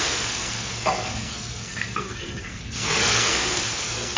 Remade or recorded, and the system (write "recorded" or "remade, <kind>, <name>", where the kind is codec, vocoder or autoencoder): remade, codec, SNAC